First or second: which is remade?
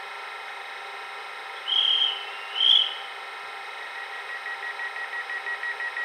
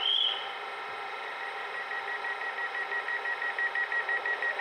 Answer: second